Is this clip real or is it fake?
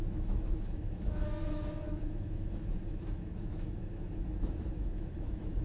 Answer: fake